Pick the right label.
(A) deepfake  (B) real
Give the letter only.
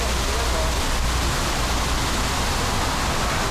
B